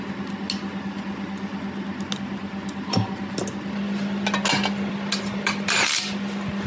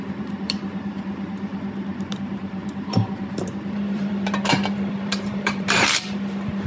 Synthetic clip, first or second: second